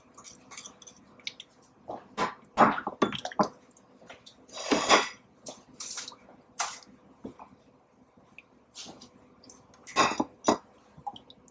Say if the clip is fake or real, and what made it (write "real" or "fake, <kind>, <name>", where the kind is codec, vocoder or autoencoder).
real